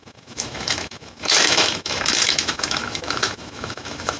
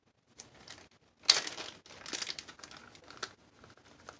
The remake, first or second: first